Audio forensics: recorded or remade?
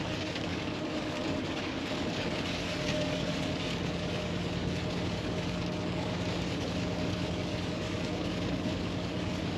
remade